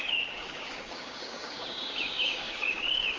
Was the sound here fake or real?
fake